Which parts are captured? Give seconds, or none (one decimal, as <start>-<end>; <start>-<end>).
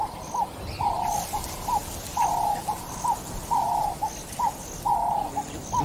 0.0-5.8